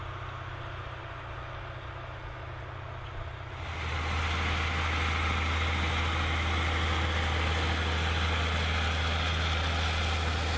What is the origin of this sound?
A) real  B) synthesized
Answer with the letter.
A